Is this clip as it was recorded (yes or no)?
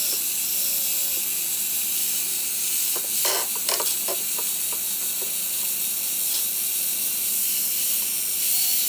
yes